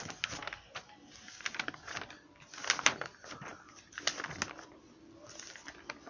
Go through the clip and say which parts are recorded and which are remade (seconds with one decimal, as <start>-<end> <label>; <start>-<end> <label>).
0.0-6.1 recorded